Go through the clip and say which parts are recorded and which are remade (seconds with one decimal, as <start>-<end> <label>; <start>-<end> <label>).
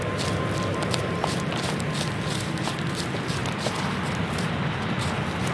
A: 0.0-5.5 recorded